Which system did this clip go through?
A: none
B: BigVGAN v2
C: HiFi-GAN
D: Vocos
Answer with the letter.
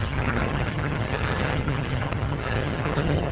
C